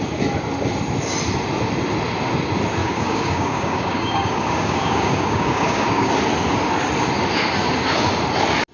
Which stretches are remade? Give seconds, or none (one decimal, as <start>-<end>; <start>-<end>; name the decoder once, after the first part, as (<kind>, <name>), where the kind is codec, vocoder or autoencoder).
2.8-6.1 (codec, DAC)